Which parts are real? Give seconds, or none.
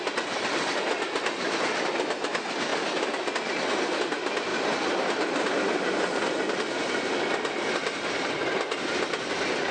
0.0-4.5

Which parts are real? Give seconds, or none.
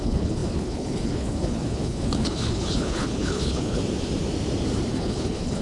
3.8-4.9